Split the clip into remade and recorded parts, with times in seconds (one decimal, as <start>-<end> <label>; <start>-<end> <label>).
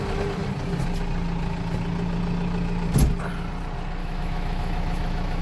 0.0-4.0 recorded; 4.0-5.4 remade